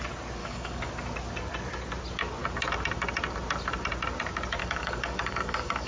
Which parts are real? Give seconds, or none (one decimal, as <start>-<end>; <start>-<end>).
0.0-0.4; 0.9-4.6